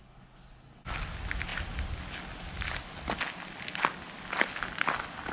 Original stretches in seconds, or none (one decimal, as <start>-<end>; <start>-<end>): 0.0-5.3

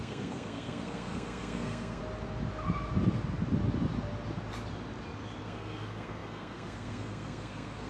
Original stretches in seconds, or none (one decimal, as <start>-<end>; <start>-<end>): 2.0-5.4

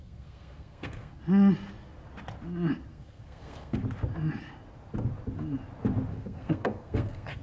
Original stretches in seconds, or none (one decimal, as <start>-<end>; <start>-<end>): 1.2-2.9; 3.8-6.1

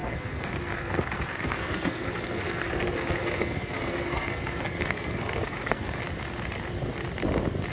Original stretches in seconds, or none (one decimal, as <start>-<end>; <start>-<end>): 6.0-7.7

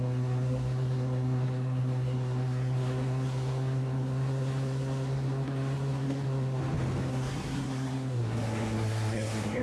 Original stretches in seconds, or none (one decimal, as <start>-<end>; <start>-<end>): 6.6-7.1

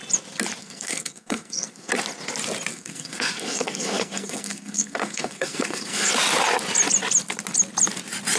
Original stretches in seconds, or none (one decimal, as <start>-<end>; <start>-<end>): 0.0-0.6; 1.9-2.7; 6.1-8.4

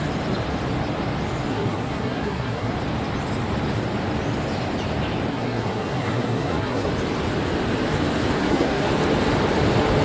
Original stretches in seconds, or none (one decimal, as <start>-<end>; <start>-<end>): 0.0-1.5; 2.7-5.3; 6.9-8.4; 8.9-10.0